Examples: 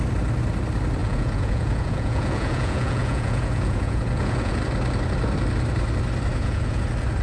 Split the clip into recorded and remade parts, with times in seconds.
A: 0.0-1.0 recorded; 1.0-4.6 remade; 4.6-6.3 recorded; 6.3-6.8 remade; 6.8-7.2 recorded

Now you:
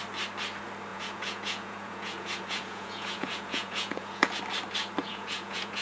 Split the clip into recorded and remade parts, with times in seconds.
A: 0.0-0.9 recorded; 0.9-4.4 remade; 4.4-5.0 recorded; 5.0-5.8 remade

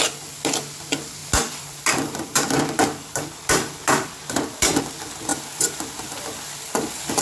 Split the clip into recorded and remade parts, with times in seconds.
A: 0.0-1.2 recorded; 1.2-4.8 remade; 4.8-5.3 recorded; 5.3-7.2 remade

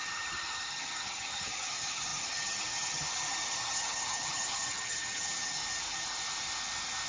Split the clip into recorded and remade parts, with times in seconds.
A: 0.0-5.6 remade; 5.6-7.1 recorded

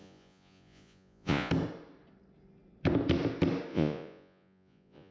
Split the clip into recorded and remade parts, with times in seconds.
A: 0.0-1.5 remade; 1.5-3.7 recorded; 3.7-5.1 remade

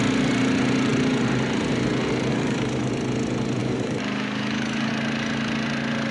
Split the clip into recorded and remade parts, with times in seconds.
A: 0.0-2.3 recorded; 2.3-2.9 remade; 2.9-3.6 recorded; 3.6-4.9 remade; 4.9-6.1 recorded